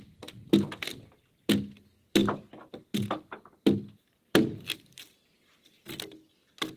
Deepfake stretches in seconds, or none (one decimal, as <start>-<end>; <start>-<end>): none